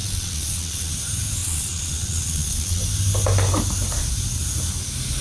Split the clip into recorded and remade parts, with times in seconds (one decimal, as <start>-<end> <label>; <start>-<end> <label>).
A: 0.0-0.9 remade; 0.9-1.4 recorded; 1.4-2.8 remade; 2.8-5.2 recorded